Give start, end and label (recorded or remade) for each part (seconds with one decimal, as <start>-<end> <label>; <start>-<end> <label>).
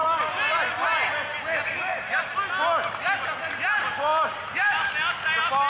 0.0-4.1 recorded; 4.1-5.7 remade